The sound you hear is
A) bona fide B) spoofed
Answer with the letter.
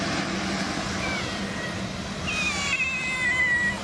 A